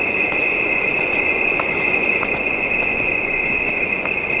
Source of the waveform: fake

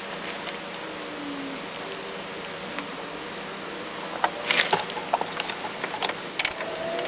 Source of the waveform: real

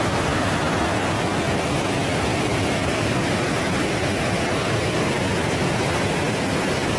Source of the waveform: real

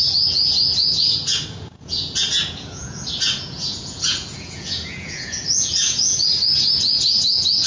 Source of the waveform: fake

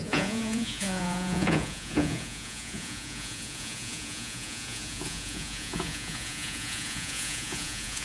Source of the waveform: fake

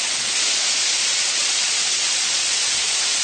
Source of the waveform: fake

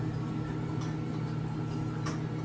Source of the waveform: real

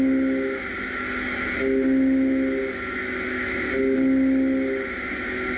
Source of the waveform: real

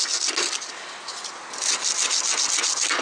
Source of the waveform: real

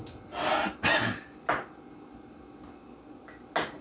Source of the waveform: real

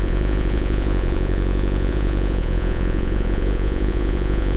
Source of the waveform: fake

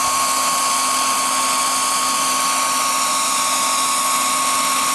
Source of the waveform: real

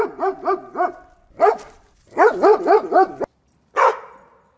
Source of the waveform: real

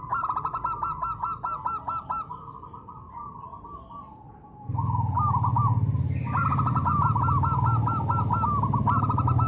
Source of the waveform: real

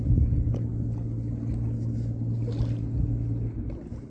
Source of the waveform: real